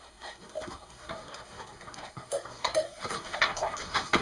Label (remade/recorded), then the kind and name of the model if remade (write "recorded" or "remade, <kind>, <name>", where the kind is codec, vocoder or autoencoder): remade, codec, SNAC